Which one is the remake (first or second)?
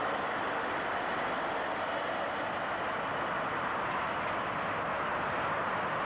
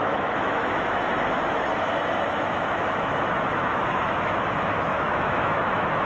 second